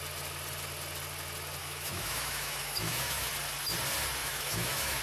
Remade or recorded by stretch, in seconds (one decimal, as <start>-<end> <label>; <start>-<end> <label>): 0.0-1.6 recorded; 1.6-3.3 remade; 3.3-4.2 recorded; 4.2-5.0 remade